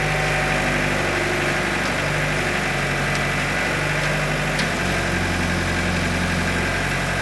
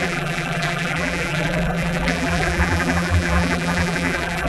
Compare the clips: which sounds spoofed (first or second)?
second